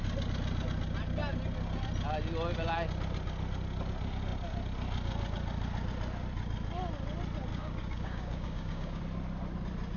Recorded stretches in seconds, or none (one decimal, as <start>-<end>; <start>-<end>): 0.0-7.5; 9.0-10.0